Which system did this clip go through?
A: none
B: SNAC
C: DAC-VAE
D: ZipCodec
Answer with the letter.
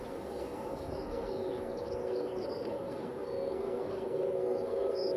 B